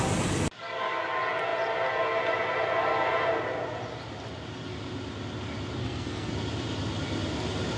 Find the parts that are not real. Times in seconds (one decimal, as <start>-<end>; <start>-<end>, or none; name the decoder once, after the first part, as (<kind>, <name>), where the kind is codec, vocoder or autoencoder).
5.8-6.3 (codec, SNAC)